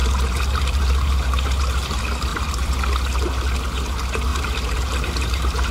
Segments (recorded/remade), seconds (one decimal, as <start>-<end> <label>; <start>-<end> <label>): 0.0-1.6 remade; 1.6-2.3 recorded; 2.3-2.8 remade; 2.8-4.3 recorded; 4.3-5.7 remade